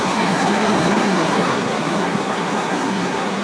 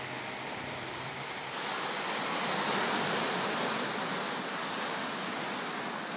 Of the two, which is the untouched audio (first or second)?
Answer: second